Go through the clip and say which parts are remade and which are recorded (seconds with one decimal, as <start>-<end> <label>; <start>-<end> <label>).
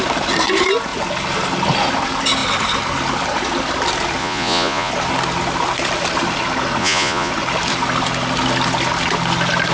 0.0-4.2 recorded; 4.2-4.9 remade; 4.9-6.8 recorded; 6.8-7.3 remade; 7.3-9.7 recorded